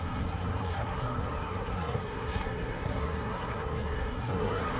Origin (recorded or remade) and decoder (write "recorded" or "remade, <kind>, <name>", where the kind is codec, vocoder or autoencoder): remade, codec, SNAC